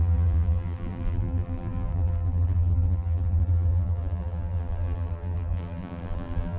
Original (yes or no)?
no